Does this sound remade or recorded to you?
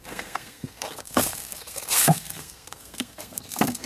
remade